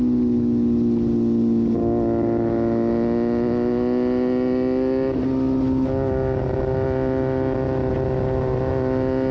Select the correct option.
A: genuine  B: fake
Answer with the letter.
A